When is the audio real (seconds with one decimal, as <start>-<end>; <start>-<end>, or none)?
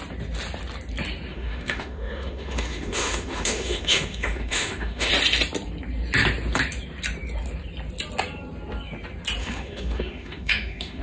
0.0-1.3; 5.1-9.4